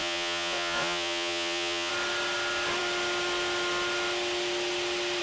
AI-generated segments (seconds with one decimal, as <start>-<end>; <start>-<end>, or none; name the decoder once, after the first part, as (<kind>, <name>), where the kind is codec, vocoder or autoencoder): 0.0-1.9 (vocoder, Vocos)

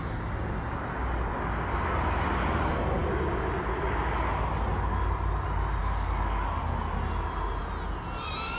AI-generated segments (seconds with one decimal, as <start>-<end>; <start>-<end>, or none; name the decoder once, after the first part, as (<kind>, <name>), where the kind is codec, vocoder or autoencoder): 5.8-6.6 (codec, DAC)

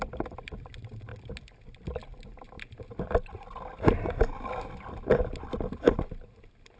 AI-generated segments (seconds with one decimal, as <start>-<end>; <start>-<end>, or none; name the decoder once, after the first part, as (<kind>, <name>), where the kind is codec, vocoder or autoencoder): none

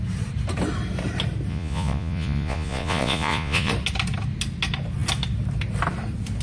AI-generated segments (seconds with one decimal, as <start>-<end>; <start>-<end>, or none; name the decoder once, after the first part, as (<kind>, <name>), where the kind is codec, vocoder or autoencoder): 1.5-3.7 (vocoder, Vocos)

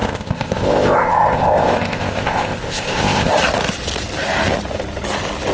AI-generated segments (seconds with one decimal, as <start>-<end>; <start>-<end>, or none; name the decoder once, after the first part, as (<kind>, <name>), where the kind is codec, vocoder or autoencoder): 0.0-3.3 (codec, ZipCodec)

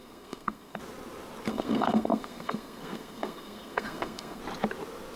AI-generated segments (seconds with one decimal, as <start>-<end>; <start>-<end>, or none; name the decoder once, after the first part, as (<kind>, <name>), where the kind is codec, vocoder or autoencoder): 0.0-0.8 (codec, SNAC); 1.5-4.4

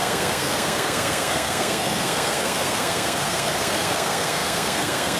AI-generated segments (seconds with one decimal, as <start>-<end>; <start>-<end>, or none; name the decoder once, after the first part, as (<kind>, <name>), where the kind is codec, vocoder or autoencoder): 0.0-5.2 (codec, SNAC)